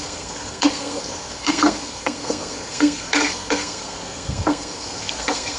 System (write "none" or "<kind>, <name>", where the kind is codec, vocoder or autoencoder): codec, SNAC